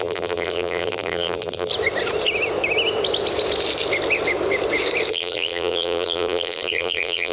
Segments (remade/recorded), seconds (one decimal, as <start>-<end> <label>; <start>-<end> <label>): 0.0-1.7 remade; 1.7-5.1 recorded; 5.1-7.3 remade